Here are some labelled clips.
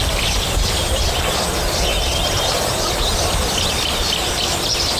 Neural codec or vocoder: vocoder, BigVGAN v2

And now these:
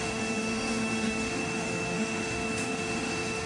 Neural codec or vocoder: autoencoder, DAC-VAE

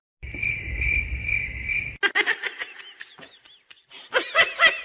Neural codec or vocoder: none